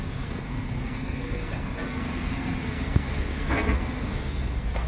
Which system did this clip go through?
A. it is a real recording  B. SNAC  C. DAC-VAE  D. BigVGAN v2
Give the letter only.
B